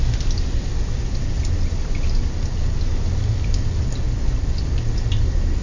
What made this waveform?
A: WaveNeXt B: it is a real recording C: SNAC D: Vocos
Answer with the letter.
B